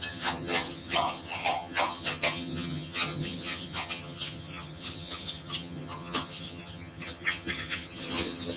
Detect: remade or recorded remade